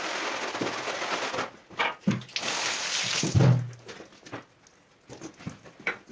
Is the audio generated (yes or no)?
no